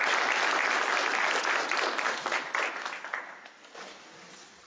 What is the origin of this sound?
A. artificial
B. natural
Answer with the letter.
B